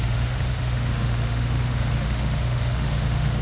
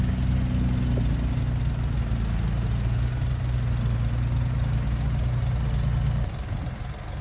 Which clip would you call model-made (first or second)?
first